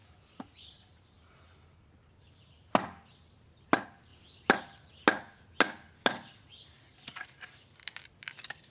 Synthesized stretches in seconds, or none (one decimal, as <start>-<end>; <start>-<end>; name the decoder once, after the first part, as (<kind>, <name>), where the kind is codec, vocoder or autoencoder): 0.0-0.8 (vocoder, Vocos)